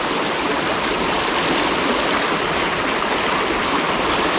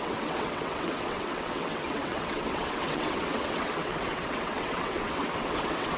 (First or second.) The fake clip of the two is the second